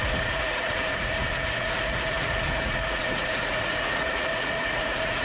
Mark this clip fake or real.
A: fake